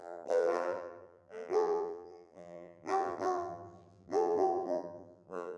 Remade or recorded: remade